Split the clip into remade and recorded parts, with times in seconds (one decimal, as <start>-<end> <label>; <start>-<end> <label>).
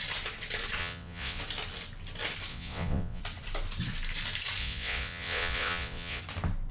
0.0-0.8 recorded; 0.8-1.4 remade; 1.4-2.5 recorded; 2.5-3.2 remade; 3.2-4.6 recorded; 4.6-6.2 remade; 6.2-6.7 recorded